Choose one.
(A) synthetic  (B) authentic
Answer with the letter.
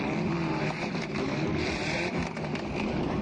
A